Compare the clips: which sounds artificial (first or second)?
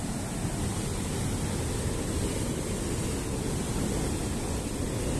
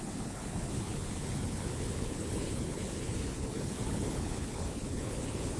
second